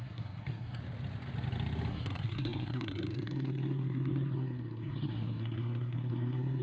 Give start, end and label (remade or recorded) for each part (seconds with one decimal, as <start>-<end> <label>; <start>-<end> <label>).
0.0-0.8 remade; 0.8-1.9 recorded; 1.9-6.6 remade